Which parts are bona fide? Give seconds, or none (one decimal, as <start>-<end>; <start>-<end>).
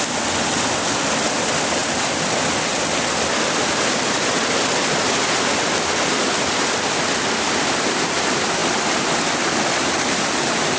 0.0-10.8